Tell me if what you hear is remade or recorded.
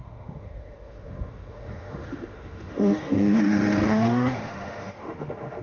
remade